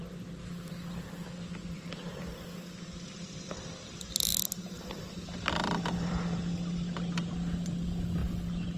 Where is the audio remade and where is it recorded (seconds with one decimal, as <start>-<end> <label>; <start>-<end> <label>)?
0.0-8.8 recorded